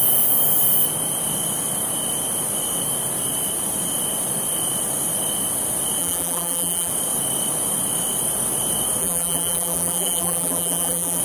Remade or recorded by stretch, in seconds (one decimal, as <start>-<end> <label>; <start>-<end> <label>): 0.0-6.0 recorded; 6.0-6.9 remade; 6.9-9.0 recorded; 9.0-11.2 remade